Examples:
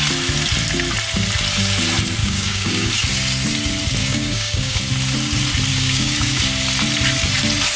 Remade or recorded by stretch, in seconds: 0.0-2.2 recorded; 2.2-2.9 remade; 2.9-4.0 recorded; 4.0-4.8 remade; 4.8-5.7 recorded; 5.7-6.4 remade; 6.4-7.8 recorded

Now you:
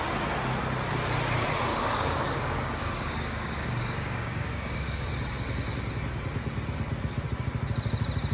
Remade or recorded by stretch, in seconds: 0.0-1.7 recorded; 1.7-5.1 remade; 5.1-8.3 recorded

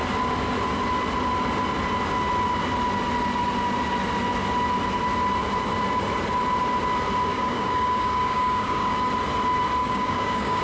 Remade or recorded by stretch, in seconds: 0.0-7.3 recorded; 7.3-9.1 remade; 9.1-9.8 recorded; 9.8-10.6 remade

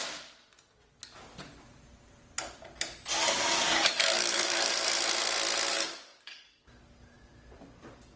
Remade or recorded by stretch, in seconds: 0.0-3.2 recorded; 3.2-4.7 remade; 4.7-5.7 recorded; 5.7-6.6 remade; 6.6-8.2 recorded